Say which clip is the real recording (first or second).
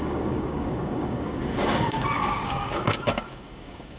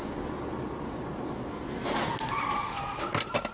second